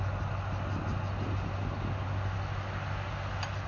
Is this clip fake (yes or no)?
no